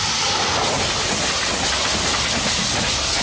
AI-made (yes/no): no